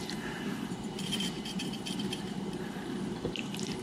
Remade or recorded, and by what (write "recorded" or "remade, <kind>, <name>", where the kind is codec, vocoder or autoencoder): remade, vocoder, BigVGAN v2